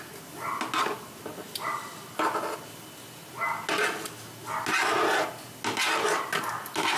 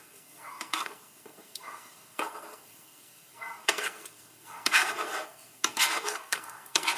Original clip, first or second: first